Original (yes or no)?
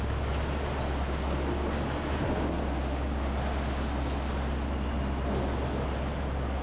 yes